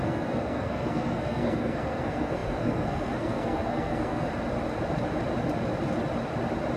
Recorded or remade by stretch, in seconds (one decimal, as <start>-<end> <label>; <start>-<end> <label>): 0.0-4.3 remade; 4.3-6.8 recorded